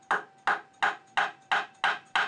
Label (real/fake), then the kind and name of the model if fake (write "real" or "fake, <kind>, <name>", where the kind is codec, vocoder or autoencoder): real